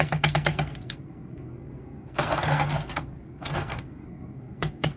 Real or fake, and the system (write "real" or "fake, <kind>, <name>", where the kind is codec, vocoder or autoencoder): fake, codec, SNAC